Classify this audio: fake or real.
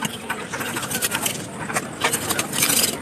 real